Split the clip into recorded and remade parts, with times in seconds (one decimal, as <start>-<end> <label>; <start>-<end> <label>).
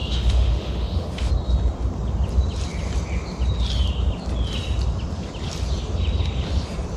0.0-1.3 remade; 1.3-7.0 recorded